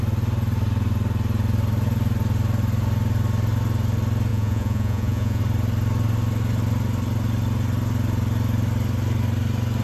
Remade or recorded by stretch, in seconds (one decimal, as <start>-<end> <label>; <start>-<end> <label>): 0.0-4.3 recorded; 4.3-5.4 remade; 5.4-9.8 recorded